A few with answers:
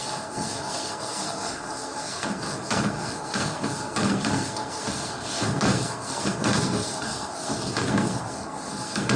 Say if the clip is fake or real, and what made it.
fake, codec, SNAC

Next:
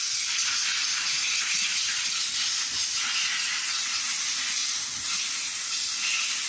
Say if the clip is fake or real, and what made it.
real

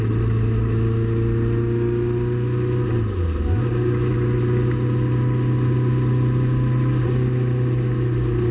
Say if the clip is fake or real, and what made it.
real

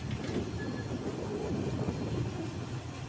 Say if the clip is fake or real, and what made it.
real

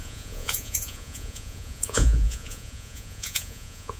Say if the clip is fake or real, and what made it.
fake, vocoder, Vocos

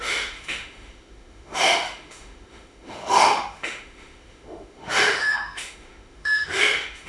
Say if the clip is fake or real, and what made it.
fake, autoencoder, DAC-VAE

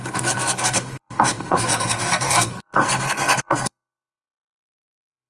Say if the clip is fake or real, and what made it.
fake, codec, SNAC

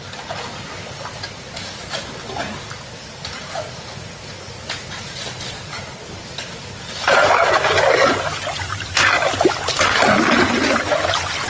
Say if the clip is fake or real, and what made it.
real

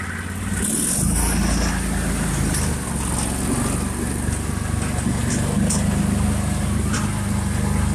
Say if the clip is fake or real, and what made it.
real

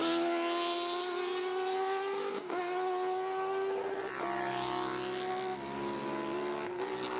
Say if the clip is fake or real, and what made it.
real